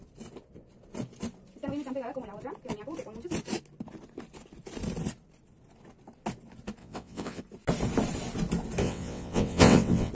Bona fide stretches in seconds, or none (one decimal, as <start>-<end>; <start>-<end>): 0.0-6.8; 7.4-8.8